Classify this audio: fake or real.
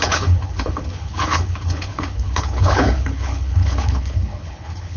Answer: fake